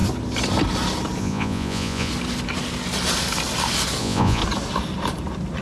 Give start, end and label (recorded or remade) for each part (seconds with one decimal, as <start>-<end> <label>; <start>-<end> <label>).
0.0-1.2 recorded; 1.2-2.1 remade; 2.1-4.0 recorded; 4.0-4.4 remade; 4.4-5.6 recorded